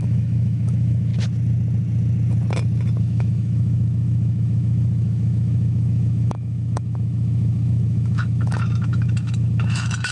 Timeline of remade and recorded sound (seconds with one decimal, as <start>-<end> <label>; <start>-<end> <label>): 0.0-1.1 remade; 1.1-3.0 recorded; 3.0-10.1 remade